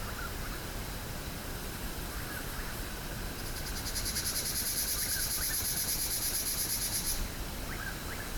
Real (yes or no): no